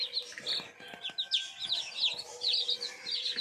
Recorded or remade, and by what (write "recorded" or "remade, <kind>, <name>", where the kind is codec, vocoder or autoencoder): recorded